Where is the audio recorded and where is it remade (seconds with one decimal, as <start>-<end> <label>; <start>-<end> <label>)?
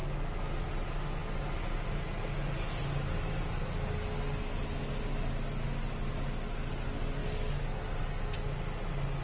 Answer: 0.0-9.2 recorded